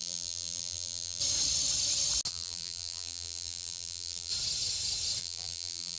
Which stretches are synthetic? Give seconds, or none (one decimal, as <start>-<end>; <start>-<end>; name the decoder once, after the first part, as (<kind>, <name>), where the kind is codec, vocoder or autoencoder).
0.0-1.2 (vocoder, BigVGAN v2); 2.3-4.3; 5.2-6.0